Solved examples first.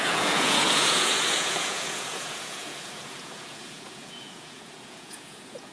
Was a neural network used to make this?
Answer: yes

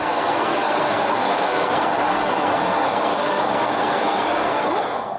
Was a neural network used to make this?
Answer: yes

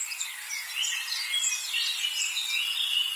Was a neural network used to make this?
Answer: no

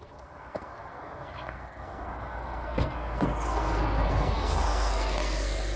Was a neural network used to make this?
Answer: yes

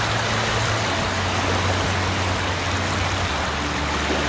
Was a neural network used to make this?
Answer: no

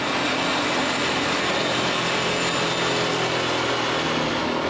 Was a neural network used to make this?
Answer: no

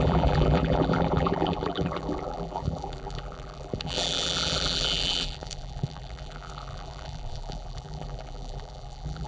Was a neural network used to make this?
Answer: yes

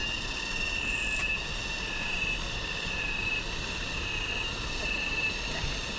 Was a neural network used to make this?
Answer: no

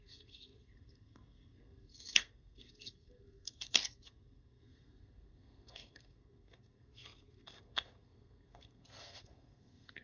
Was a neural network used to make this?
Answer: yes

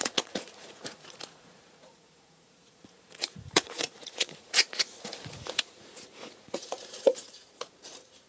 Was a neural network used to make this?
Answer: yes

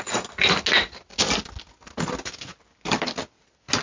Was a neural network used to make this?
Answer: no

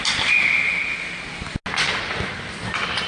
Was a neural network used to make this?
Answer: no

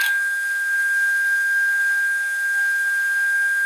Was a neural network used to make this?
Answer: yes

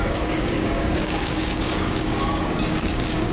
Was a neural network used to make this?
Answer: yes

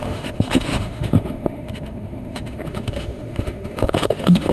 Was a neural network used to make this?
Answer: yes